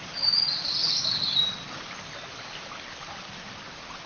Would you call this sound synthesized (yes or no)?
yes